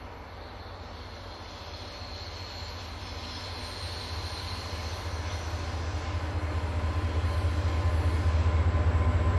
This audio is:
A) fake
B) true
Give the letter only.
B